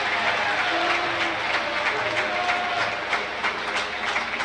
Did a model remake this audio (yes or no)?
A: no